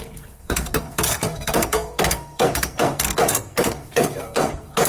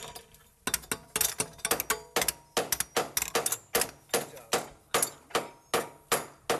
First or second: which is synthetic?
first